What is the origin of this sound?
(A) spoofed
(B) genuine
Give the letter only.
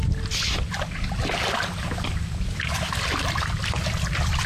B